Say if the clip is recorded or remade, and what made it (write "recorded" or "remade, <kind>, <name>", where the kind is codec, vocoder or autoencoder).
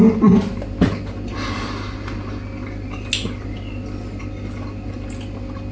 recorded